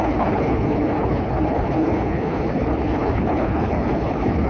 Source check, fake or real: fake